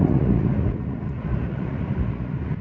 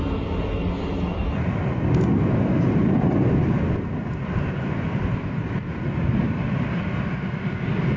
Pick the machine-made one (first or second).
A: first